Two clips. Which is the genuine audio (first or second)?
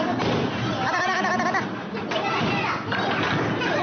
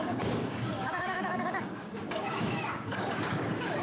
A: first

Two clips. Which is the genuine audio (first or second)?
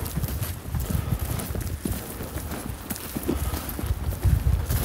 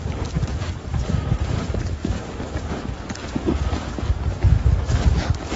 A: first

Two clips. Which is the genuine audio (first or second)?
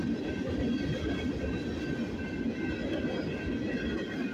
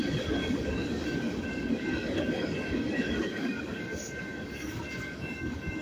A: first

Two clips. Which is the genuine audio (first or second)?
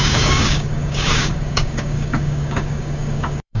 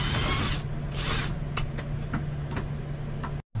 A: second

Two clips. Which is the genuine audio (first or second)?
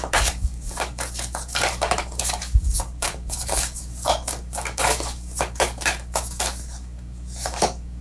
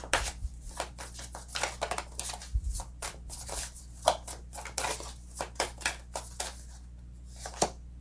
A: second